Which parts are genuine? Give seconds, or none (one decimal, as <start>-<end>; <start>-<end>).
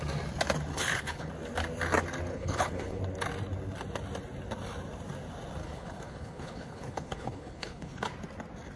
0.0-0.7; 1.3-2.3; 3.0-5.6; 8.1-8.8